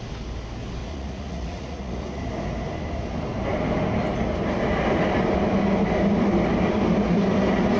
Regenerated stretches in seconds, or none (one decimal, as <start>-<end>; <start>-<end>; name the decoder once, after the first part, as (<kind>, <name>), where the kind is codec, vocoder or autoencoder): 0.8-2.2 (vocoder, Vocos)